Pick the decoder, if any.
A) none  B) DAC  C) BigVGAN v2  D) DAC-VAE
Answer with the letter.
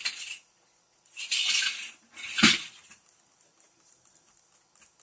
A